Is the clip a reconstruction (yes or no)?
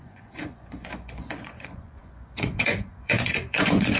yes